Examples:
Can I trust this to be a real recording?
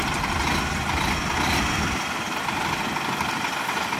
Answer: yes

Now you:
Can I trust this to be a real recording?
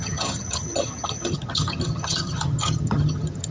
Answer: no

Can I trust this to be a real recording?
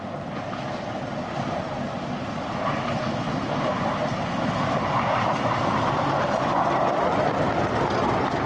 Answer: yes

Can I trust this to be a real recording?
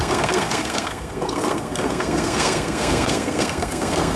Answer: no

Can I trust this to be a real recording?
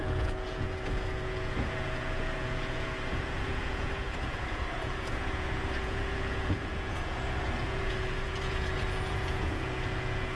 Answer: no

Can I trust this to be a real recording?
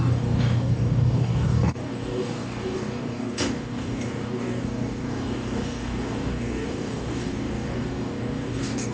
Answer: no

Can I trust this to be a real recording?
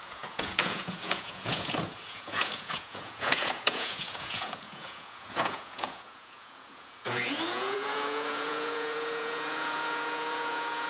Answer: no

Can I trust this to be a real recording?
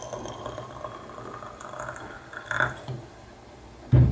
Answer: yes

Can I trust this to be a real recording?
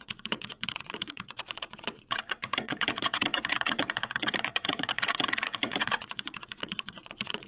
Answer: no